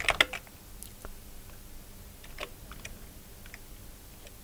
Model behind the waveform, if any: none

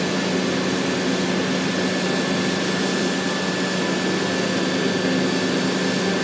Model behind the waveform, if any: none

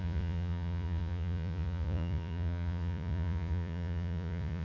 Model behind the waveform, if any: vocoder, Vocos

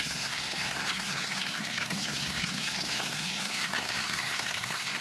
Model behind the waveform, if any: codec, SNAC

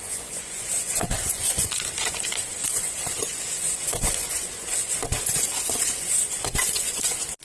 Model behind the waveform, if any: vocoder, Vocos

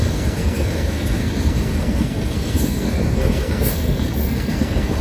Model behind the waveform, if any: codec, SNAC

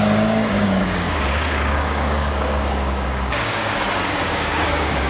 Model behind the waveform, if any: codec, DAC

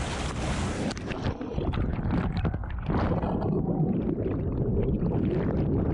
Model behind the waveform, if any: none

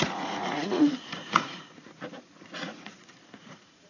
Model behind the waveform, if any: vocoder, Vocos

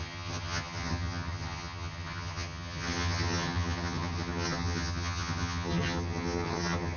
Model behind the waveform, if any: vocoder, HiFi-GAN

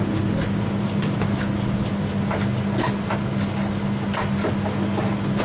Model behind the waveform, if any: none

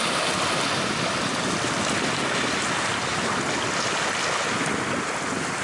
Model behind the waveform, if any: none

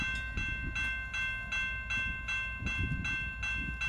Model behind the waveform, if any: none